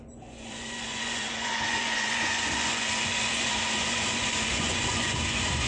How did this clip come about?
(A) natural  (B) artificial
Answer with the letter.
B